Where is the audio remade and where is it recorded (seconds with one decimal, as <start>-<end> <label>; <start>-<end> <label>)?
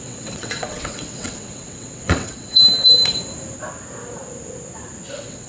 0.0-3.2 remade; 3.2-5.1 recorded; 5.1-5.5 remade